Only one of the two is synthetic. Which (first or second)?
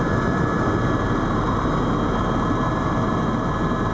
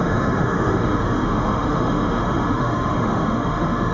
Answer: second